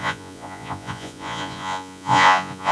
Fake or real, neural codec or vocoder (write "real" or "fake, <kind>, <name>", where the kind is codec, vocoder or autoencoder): fake, vocoder, Vocos